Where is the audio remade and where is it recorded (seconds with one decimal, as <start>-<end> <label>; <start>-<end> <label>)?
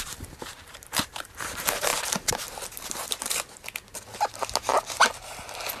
0.0-1.9 remade; 1.9-5.8 recorded